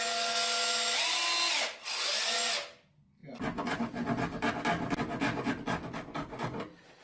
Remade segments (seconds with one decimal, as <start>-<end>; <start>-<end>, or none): none